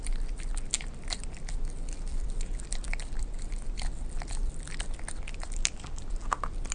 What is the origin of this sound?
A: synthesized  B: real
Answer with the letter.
B